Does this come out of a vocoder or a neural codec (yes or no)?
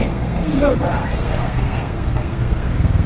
yes